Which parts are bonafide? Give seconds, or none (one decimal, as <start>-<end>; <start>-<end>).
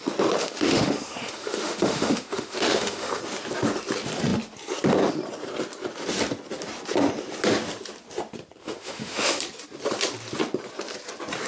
0.0-0.4; 3.2-8.6; 9.4-11.5